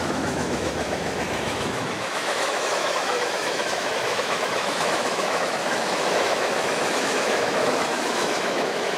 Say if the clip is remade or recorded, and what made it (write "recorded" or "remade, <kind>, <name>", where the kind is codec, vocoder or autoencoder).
remade, autoencoder, DAC-VAE